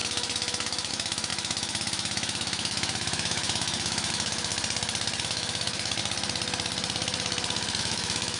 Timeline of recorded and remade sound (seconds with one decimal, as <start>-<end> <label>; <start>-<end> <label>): 0.0-4.5 remade; 4.5-5.2 recorded; 5.2-6.0 remade; 6.0-7.8 recorded; 7.8-8.4 remade

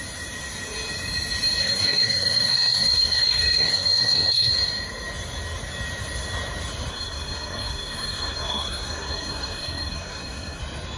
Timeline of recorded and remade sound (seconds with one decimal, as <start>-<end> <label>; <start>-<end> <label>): 0.0-1.6 recorded; 1.6-4.5 remade; 4.5-6.9 recorded; 6.9-10.6 remade; 10.6-11.0 recorded

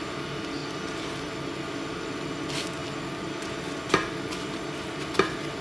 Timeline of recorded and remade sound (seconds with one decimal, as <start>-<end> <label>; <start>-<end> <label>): 0.0-5.6 recorded